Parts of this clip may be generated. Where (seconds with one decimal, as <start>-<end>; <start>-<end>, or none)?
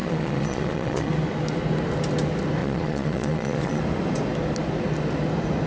0.0-1.1; 2.6-3.8